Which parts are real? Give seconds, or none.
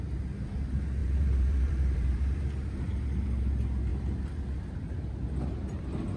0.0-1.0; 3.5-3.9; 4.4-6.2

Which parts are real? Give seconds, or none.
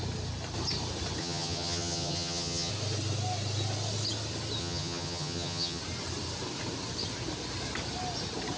0.0-1.2; 2.7-4.6; 5.8-8.6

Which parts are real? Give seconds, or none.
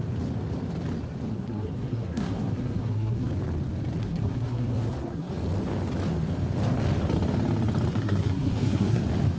0.0-1.3; 3.3-4.0; 5.3-7.9; 9.0-9.4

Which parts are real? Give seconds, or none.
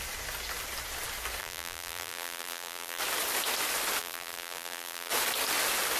0.0-1.4; 3.0-4.0; 5.1-6.0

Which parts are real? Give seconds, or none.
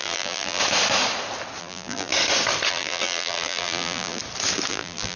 0.6-1.6; 2.1-2.7; 4.2-4.7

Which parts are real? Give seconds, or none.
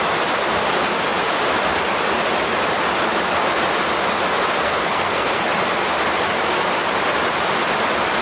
0.0-4.5; 5.4-8.2